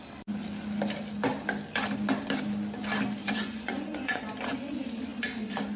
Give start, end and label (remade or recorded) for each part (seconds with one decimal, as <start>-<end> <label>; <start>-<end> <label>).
0.0-3.2 recorded; 3.2-4.2 remade; 4.2-5.8 recorded